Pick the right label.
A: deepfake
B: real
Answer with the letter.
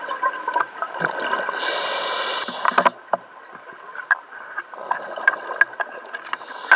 B